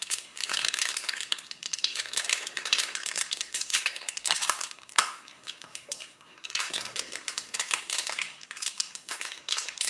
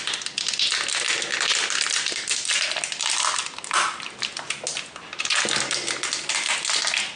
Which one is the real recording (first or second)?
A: second